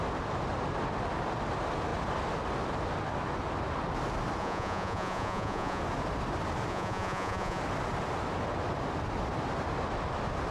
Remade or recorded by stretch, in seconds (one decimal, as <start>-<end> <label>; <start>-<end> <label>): 0.0-4.4 recorded; 4.4-5.8 remade; 5.8-6.7 recorded; 6.7-7.6 remade; 7.6-10.5 recorded